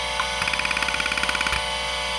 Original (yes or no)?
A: yes